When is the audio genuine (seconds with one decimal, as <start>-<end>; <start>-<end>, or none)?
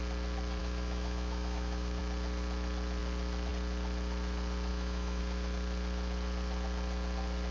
0.0-0.6; 2.0-4.7; 5.2-7.5